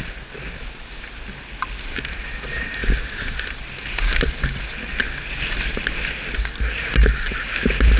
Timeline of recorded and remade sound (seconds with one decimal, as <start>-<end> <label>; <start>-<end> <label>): 0.0-8.0 recorded